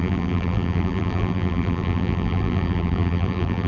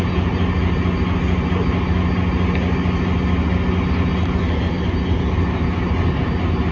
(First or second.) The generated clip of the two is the first